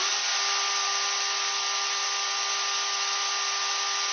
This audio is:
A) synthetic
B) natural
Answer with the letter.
B